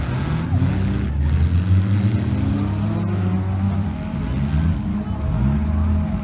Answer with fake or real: real